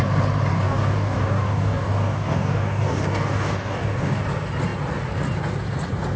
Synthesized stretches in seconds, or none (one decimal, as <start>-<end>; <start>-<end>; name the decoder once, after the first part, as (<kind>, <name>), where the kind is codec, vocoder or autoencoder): 0.5-4.2 (codec, DAC)